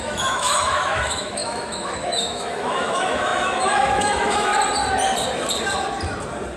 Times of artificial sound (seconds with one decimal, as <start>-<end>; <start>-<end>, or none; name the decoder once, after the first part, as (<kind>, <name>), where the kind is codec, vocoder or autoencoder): 0.0-4.5 (autoencoder, DAC-VAE)